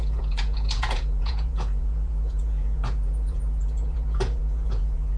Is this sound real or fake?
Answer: fake